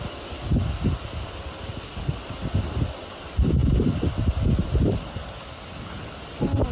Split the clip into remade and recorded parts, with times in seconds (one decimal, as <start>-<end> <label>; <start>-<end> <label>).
0.0-6.7 recorded